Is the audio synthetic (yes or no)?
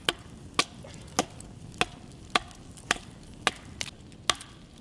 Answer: no